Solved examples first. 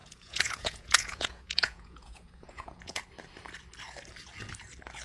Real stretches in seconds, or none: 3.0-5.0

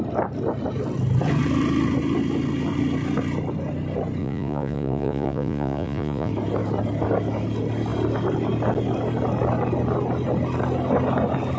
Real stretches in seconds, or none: 0.0-4.2; 6.3-11.6